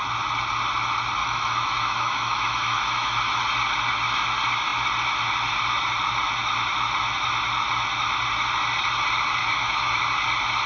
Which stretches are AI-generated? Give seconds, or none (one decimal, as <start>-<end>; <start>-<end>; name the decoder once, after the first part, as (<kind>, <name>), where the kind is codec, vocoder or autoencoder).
1.2-3.4 (autoencoder, DAC-VAE); 9.4-10.0